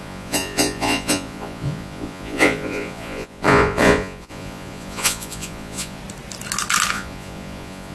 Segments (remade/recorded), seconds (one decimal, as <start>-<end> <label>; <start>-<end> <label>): 0.0-6.0 remade; 6.0-6.9 recorded; 6.9-7.9 remade